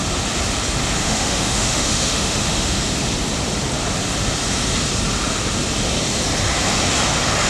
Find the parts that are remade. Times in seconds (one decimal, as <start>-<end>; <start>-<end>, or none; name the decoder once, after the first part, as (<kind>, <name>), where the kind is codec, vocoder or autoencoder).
1.0-2.8 (autoencoder, DAC-VAE)